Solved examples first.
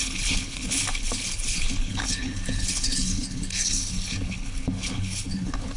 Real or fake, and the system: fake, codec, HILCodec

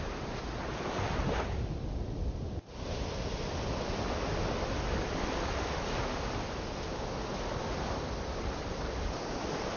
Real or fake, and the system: real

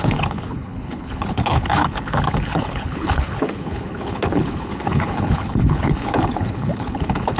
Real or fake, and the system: fake, codec, HILCodec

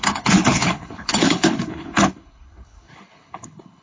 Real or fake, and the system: fake, codec, HILCodec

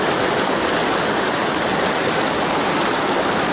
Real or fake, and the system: real